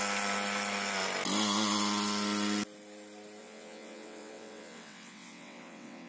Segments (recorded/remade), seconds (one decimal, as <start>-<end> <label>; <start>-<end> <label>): 0.0-3.4 recorded; 3.4-6.1 remade